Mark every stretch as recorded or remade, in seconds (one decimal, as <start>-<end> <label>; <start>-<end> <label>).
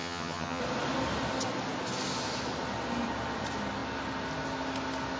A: 0.0-0.6 remade; 0.6-5.2 recorded